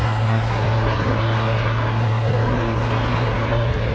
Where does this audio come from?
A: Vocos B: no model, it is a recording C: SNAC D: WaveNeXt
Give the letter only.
C